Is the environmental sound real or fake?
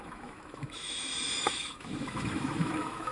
fake